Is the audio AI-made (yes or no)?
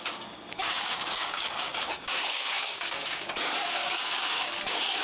yes